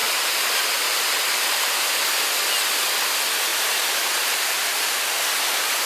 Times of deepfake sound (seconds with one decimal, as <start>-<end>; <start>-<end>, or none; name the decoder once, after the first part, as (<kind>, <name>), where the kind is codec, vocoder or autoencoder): 3.5-4.9 (vocoder, BigVGAN v2)